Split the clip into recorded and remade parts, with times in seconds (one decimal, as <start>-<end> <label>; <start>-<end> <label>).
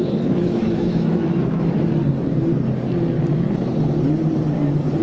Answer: 0.0-2.0 remade; 2.0-5.0 recorded